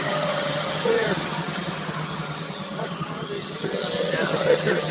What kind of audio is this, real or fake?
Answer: fake